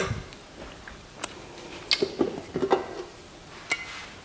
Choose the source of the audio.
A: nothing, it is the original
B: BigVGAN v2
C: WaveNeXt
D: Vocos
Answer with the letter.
A